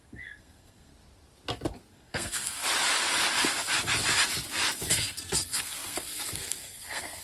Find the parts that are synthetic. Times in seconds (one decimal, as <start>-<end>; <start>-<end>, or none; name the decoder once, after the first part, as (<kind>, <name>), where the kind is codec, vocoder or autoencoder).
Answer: 0.0-0.9 (codec, SNAC); 1.9-2.6; 4.9-7.2